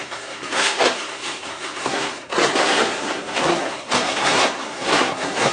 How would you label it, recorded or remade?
remade